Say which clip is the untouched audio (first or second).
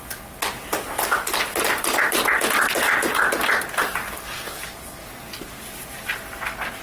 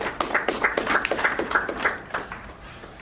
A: first